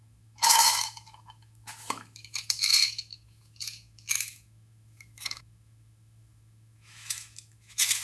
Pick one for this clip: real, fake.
fake